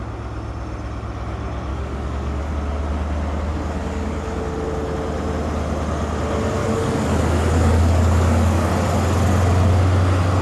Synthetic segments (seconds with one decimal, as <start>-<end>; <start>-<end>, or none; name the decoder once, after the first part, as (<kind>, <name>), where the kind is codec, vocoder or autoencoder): 1.7-2.5 (codec, DAC); 3.5-4.4; 6.6-8.7